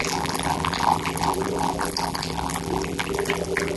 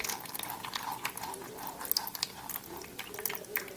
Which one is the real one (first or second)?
second